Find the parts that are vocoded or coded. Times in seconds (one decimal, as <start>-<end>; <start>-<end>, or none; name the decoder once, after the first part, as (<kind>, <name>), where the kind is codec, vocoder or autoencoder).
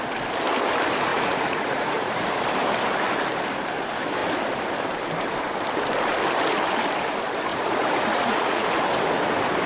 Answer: 1.1-2.4 (vocoder, Vocos); 7.5-8.8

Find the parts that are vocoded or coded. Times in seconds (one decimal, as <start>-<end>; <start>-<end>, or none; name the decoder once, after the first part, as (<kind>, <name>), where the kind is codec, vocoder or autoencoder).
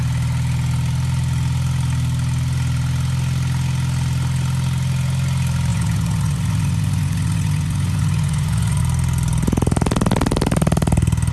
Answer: 5.7-8.8 (vocoder, Vocos)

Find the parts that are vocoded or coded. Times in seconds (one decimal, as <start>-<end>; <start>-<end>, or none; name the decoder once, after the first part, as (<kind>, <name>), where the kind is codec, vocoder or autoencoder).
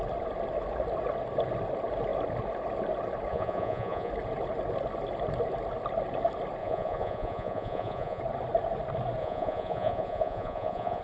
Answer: 3.3-4.1 (vocoder, Vocos); 6.6-8.2; 9.2-11.0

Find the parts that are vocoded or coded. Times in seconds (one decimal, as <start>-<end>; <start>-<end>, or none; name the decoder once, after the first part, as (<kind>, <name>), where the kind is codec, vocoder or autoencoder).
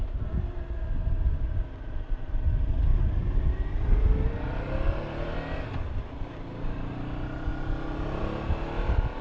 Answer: none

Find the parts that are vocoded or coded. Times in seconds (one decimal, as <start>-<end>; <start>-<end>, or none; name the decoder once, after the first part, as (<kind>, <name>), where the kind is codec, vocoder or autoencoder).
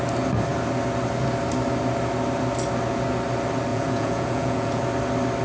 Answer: 3.7-4.8 (vocoder, Vocos)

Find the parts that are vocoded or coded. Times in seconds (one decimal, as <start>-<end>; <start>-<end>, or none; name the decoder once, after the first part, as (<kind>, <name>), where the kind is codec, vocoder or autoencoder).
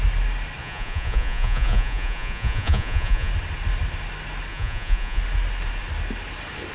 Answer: 0.6-3.3 (vocoder, Vocos); 4.5-5.2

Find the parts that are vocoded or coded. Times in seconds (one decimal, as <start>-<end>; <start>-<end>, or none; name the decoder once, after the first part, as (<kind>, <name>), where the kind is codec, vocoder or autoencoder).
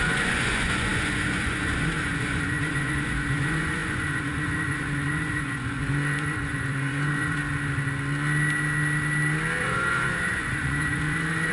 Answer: 0.0-7.4 (vocoder, Vocos); 9.6-11.5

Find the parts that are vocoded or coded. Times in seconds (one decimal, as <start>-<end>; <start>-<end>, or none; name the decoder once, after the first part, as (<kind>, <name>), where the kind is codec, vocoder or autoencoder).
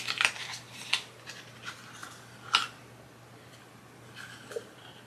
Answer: none